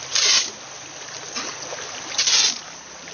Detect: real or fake real